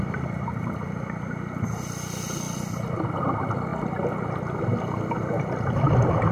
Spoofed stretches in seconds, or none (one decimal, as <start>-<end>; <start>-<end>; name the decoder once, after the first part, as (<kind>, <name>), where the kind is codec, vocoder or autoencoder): none